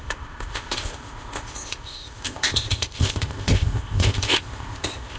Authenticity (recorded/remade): remade